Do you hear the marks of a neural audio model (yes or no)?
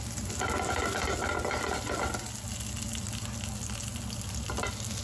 no